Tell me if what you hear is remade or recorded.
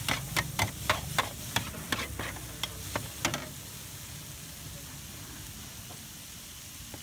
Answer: recorded